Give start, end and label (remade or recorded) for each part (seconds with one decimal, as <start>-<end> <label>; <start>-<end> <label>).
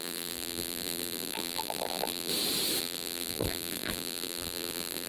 0.0-2.3 remade; 2.3-2.8 recorded; 2.8-5.1 remade